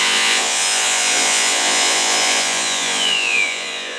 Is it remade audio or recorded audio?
remade